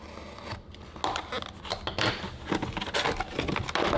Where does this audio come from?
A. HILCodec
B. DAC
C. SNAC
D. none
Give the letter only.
D